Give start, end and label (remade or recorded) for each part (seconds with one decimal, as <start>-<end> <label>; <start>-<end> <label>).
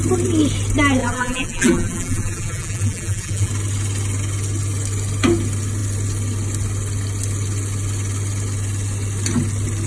0.0-1.0 recorded; 1.0-3.5 remade; 3.5-9.9 recorded